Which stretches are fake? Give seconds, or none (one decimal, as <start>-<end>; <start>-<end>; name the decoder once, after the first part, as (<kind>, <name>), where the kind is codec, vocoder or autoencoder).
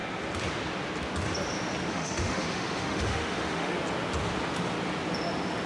1.9-3.7 (autoencoder, DAC-VAE)